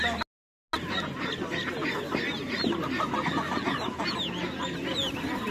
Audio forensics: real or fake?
real